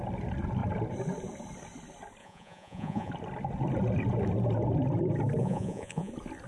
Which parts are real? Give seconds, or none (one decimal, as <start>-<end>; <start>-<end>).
0.0-2.2; 3.1-5.4; 6.1-6.5